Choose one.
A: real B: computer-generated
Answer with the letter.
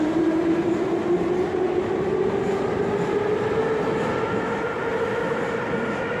A